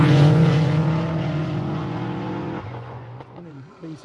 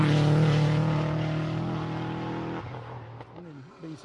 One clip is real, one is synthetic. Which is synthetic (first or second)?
first